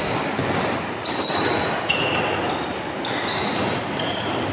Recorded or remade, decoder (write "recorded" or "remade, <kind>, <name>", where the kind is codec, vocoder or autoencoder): recorded